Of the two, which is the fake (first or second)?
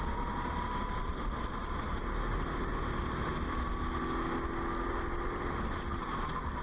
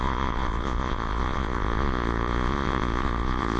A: second